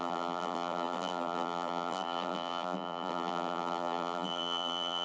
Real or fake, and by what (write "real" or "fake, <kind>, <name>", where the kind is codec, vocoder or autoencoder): fake, vocoder, BigVGAN v2